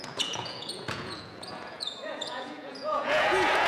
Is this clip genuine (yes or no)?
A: no